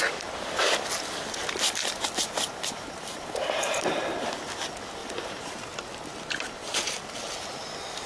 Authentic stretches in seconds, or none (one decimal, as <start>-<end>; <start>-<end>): 0.0-1.4; 4.1-5.0; 5.7-8.1